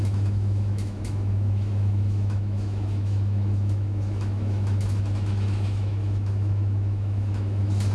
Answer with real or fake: fake